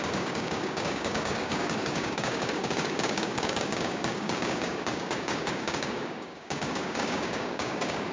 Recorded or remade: remade